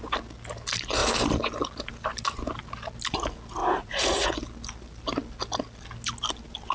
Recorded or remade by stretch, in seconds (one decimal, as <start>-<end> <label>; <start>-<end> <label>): 0.0-3.6 recorded; 3.6-4.3 remade; 4.3-6.7 recorded